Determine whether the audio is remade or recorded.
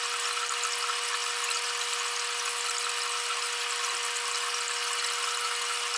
recorded